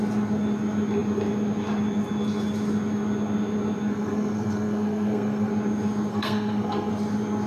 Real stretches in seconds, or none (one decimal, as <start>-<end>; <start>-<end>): 0.0-3.9; 5.5-6.1; 6.9-7.5